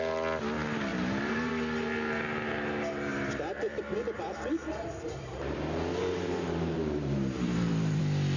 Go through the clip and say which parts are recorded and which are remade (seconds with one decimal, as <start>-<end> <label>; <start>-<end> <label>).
0.0-0.9 recorded; 0.9-1.5 remade; 1.5-3.1 recorded; 3.1-8.0 remade; 8.0-8.4 recorded